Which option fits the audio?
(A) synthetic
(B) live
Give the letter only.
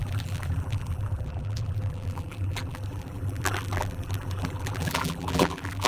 A